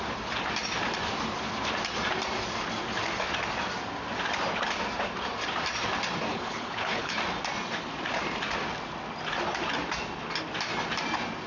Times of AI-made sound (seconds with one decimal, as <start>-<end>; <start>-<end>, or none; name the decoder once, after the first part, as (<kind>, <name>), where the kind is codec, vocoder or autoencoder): 6.3-7.2 (codec, HILCodec)